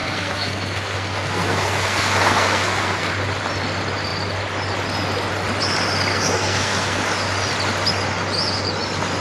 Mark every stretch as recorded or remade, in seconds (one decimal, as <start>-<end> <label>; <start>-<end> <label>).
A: 0.0-3.1 remade; 3.1-6.1 recorded; 6.1-7.0 remade; 7.0-9.2 recorded